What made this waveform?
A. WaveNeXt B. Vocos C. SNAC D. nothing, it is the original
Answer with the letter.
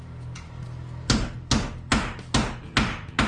D